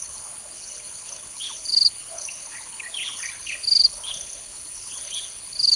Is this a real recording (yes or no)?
no